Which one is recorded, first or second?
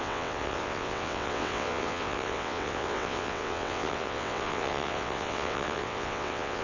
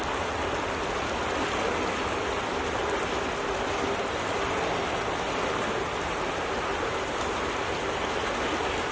second